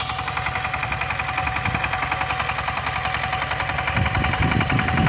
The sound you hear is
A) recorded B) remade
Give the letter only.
A